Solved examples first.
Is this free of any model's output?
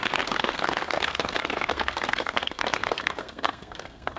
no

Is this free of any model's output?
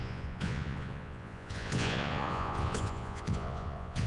no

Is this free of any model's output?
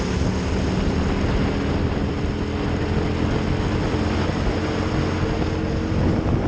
yes